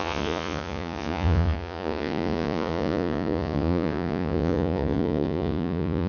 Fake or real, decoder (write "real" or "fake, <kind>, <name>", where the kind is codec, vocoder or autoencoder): fake, vocoder, Vocos